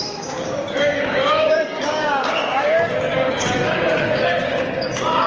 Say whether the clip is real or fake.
fake